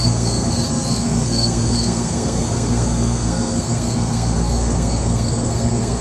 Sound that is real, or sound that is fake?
fake